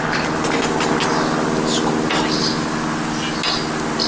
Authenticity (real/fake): real